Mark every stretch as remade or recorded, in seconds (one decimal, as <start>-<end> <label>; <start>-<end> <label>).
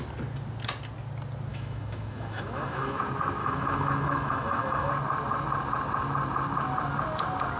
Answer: 0.0-1.5 recorded; 1.5-3.0 remade; 3.0-3.4 recorded; 3.4-4.9 remade; 4.9-7.6 recorded